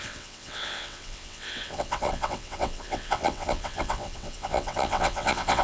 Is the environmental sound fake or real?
fake